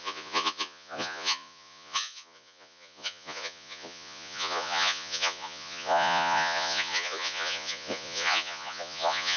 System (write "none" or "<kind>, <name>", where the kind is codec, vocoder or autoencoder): vocoder, Vocos